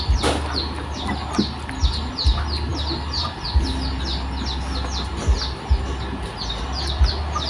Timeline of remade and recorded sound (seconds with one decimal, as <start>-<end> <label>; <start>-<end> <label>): 0.0-7.5 recorded